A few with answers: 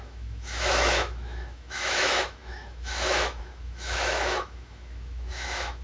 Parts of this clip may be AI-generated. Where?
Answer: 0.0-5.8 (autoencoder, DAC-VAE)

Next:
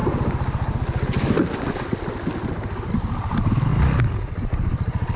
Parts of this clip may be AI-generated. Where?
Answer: 3.7-5.2 (vocoder, BigVGAN v2)

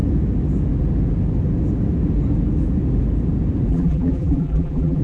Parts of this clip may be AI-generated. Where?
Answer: 3.7-5.0 (vocoder, BigVGAN v2)

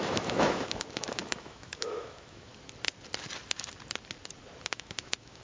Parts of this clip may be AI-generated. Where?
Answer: 0.0-2.5 (autoencoder, DAC-VAE); 4.6-5.4

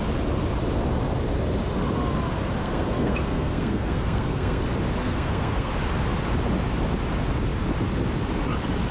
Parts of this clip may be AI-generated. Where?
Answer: 2.6-4.6 (codec, SNAC); 5.0-5.7

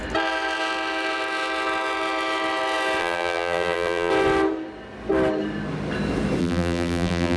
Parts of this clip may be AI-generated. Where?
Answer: 3.0-4.1 (vocoder, BigVGAN v2); 6.4-7.4

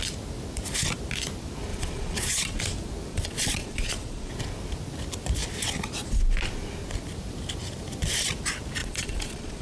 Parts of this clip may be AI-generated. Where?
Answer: 1.7-2.6 (vocoder, Vocos); 3.1-4.3; 8.8-9.6